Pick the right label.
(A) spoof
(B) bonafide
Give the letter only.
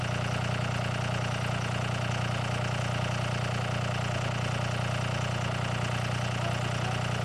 B